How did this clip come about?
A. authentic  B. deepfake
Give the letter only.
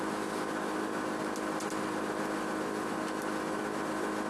A